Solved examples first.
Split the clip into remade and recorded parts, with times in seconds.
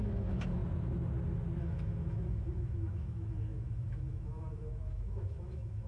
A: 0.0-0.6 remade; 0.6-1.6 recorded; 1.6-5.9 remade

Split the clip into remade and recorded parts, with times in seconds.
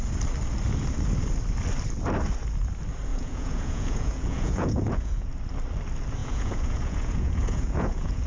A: 0.0-3.1 recorded; 3.1-5.3 remade; 5.3-6.2 recorded; 6.2-8.3 remade